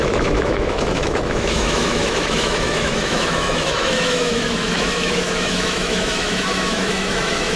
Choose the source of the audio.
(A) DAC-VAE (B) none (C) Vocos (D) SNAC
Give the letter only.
A